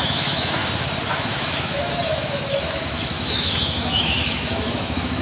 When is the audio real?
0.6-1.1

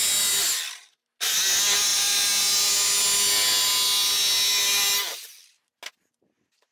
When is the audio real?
0.0-6.7

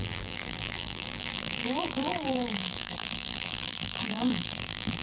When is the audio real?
none

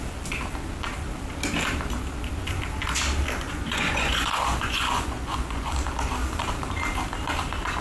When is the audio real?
0.0-3.4; 5.7-7.8

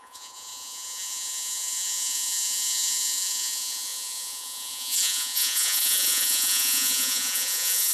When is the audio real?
none

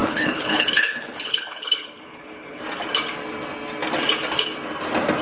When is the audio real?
2.6-5.2

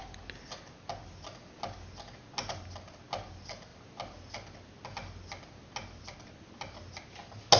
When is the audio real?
0.0-7.6

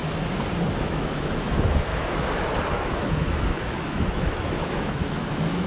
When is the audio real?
0.0-0.8; 1.9-2.7